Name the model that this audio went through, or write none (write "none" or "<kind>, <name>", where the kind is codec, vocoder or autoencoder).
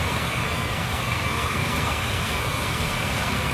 codec, SNAC